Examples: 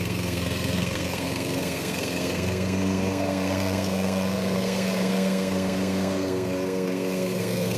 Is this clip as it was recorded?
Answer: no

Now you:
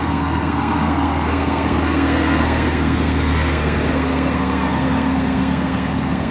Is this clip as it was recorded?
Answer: no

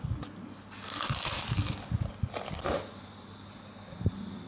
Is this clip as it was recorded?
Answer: yes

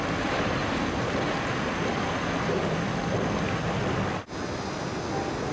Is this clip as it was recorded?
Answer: yes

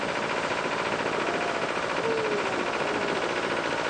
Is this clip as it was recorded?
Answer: yes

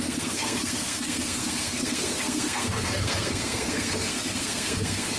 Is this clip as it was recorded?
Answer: no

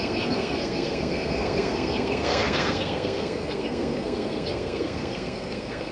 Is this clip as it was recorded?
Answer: no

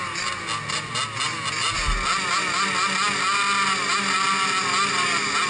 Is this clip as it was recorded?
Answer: yes